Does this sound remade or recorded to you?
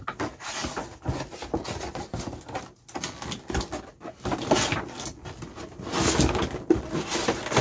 recorded